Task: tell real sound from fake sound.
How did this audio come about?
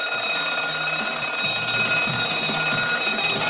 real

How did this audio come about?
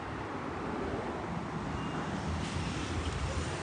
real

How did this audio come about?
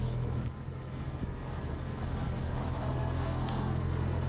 fake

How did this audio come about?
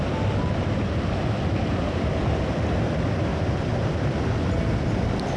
real